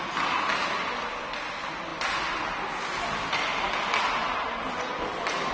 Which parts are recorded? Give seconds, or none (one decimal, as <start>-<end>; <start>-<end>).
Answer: 0.0-5.5